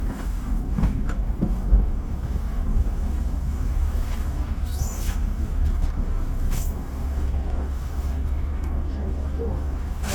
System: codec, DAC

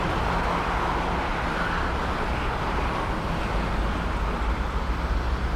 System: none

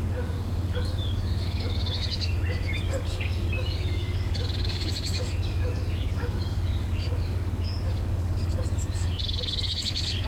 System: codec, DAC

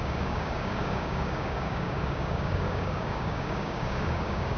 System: codec, DAC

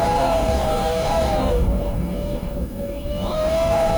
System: codec, DAC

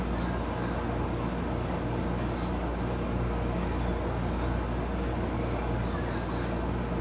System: none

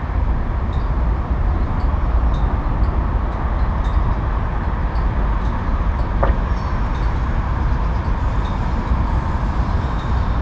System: none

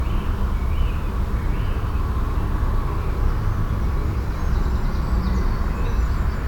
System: none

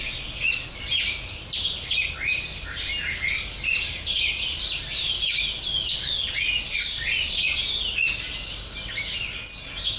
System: none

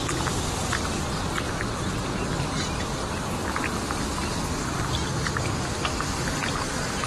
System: none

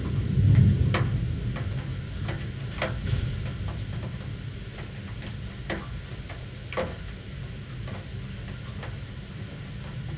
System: none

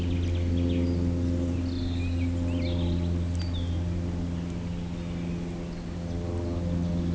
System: none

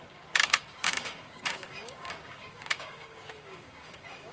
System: codec, DAC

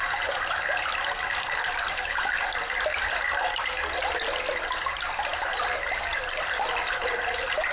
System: none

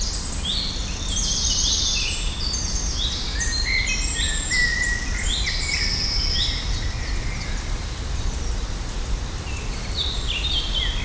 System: none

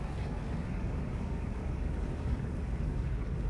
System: codec, DAC